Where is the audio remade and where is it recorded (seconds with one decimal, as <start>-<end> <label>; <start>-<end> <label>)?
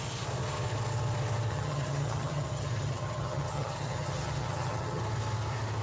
0.0-1.5 recorded; 1.5-5.0 remade; 5.0-5.8 recorded